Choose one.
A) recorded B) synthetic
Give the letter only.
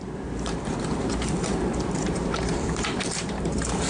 B